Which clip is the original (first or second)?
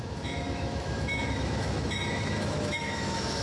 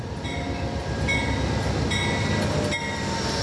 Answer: second